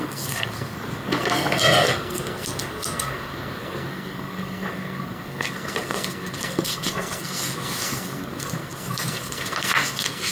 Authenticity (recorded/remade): remade